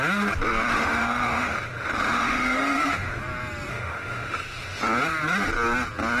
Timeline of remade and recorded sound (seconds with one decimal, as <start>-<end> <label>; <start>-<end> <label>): 0.0-0.7 recorded; 0.7-3.2 remade; 3.2-3.7 recorded; 3.7-4.8 remade; 4.8-6.2 recorded